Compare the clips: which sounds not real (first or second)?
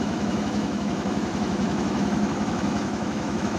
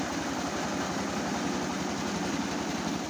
first